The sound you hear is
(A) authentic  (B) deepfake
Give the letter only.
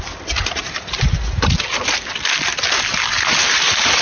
A